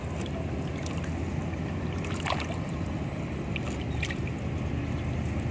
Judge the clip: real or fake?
real